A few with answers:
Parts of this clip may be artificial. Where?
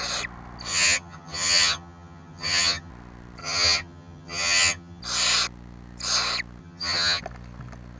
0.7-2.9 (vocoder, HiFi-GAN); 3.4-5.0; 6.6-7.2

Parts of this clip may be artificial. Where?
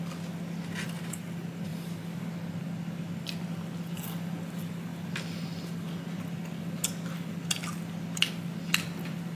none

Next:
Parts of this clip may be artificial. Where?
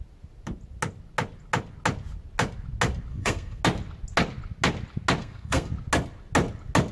3.1-3.6 (codec, SNAC); 5.2-5.7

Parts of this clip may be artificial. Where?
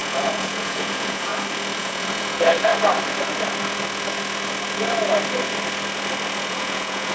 0.0-1.3 (vocoder, Vocos); 1.8-2.7; 6.5-7.1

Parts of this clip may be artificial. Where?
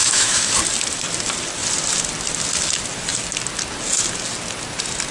0.0-0.5 (autoencoder, DAC-VAE)